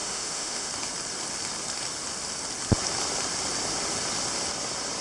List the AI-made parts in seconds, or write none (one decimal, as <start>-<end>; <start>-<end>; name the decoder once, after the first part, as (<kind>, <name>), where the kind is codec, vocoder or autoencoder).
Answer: 0.0-0.7 (autoencoder, DAC-VAE)